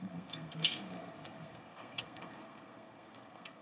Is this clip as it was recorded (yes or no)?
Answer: no